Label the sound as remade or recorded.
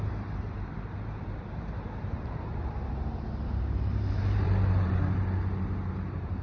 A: remade